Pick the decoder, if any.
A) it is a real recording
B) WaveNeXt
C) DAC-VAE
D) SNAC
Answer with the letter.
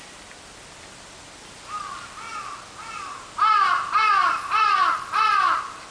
A